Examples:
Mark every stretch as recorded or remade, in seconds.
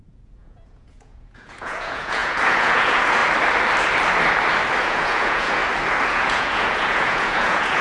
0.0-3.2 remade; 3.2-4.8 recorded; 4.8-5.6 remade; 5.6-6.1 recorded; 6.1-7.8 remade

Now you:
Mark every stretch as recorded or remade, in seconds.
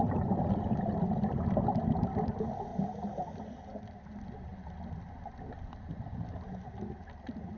0.0-7.6 recorded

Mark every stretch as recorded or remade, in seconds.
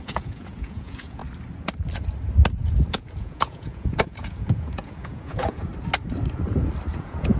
0.0-1.2 remade; 1.2-2.9 recorded; 2.9-5.7 remade; 5.7-6.9 recorded; 6.9-7.4 remade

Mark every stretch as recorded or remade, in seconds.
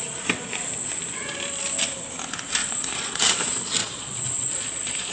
0.0-2.6 recorded; 2.6-3.2 remade; 3.2-3.8 recorded; 3.8-5.1 remade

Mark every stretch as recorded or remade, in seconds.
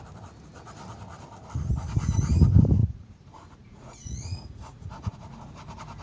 0.0-2.8 recorded; 2.8-5.5 remade; 5.5-6.0 recorded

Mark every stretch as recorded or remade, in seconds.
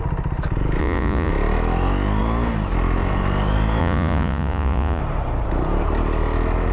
0.0-0.8 recorded; 0.8-1.3 remade; 1.3-3.8 recorded; 3.8-5.0 remade; 5.0-6.7 recorded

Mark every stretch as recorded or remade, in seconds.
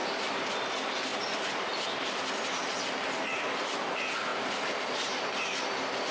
0.0-6.1 recorded